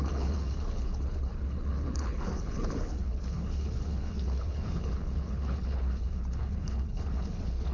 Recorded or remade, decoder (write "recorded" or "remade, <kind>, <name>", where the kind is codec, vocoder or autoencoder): remade, codec, HILCodec